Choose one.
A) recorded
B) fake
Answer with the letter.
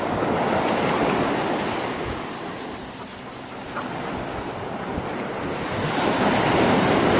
A